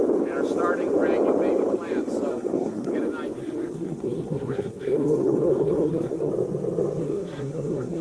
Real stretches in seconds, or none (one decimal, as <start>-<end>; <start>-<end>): 0.0-2.3; 2.9-3.4; 6.3-7.0

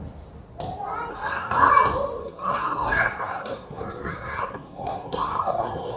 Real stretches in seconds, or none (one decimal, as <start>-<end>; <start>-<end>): 0.0-1.1; 1.7-2.2

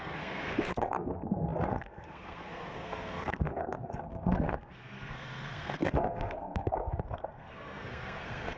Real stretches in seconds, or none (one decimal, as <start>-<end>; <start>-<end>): none

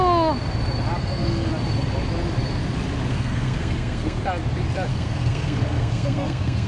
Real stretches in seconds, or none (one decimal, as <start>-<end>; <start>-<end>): 0.0-1.0; 1.5-3.1; 4.2-4.9

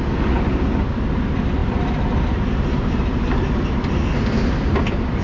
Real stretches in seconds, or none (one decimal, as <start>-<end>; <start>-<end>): 0.0-5.2

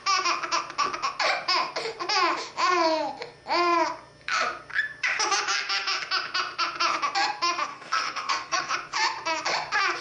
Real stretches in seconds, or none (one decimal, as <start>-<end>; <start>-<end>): 0.0-7.7; 8.7-10.0

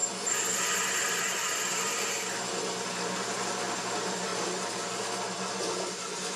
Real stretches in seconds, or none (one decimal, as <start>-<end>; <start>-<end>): 0.0-6.4